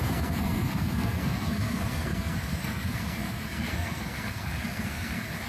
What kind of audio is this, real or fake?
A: fake